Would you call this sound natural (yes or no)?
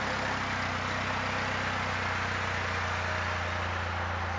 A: yes